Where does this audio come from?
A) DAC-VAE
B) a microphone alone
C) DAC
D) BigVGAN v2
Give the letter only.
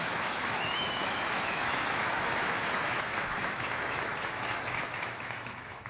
A